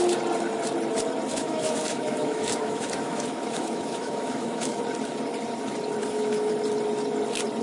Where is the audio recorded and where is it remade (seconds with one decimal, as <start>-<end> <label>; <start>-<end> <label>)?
0.0-1.3 recorded; 1.3-4.8 remade; 4.8-6.0 recorded; 6.0-6.5 remade; 6.5-7.6 recorded